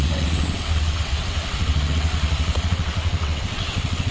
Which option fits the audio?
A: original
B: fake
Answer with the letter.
B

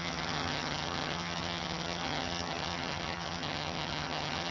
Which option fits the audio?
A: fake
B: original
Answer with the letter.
A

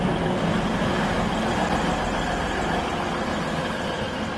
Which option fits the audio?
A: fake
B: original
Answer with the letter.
B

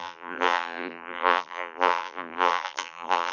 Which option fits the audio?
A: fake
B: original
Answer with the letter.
A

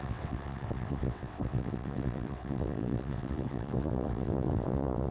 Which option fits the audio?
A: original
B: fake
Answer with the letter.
B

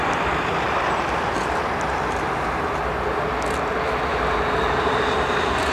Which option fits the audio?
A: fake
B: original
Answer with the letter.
B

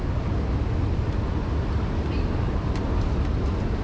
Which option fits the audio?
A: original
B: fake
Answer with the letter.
A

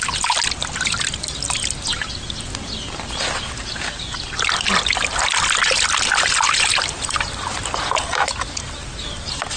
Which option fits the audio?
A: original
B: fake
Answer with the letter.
A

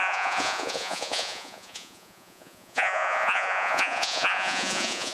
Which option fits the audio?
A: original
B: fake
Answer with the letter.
B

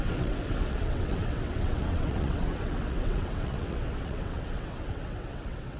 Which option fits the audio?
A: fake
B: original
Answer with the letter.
A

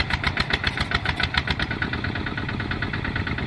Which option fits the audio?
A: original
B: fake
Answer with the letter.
A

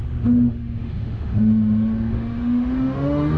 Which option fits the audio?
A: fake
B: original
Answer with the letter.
A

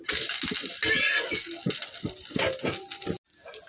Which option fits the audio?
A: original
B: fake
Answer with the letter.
A